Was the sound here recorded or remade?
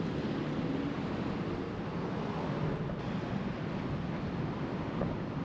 recorded